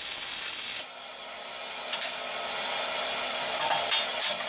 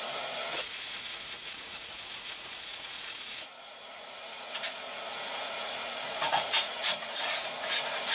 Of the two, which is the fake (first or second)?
second